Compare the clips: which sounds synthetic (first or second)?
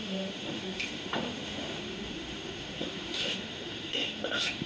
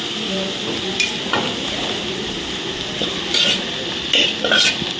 first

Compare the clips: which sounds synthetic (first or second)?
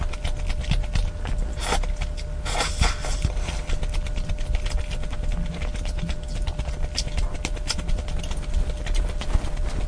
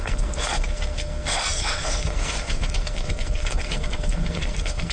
second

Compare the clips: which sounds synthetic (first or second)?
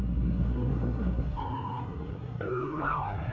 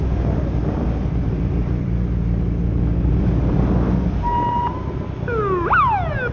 first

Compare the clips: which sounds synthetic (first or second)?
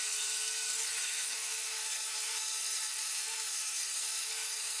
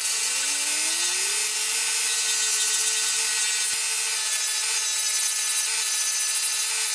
first